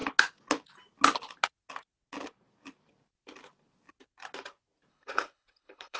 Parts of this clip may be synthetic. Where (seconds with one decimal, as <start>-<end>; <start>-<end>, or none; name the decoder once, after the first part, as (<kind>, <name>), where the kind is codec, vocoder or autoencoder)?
4.9-6.0 (codec, HILCodec)